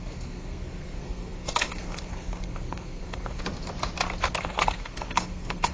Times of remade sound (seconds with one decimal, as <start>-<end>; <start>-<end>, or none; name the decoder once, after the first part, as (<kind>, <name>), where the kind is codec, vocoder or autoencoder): 0.0-3.4 (codec, SNAC); 4.4-5.7